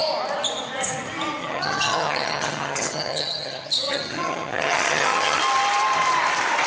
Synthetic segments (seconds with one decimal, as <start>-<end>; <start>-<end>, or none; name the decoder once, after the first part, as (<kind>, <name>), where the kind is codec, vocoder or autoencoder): 1.4-5.4 (vocoder, HiFi-GAN)